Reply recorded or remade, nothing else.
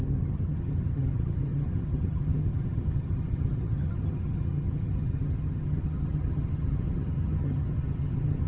remade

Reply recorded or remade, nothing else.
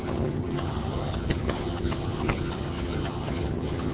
remade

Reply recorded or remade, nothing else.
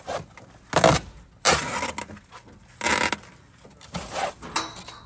recorded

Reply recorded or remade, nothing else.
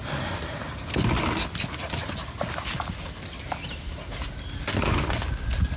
recorded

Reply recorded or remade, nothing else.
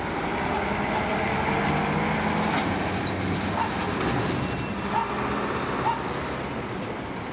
recorded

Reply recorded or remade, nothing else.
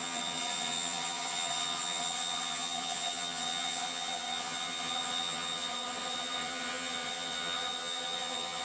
remade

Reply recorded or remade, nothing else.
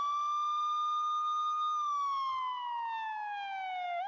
recorded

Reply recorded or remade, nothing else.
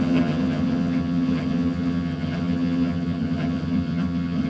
remade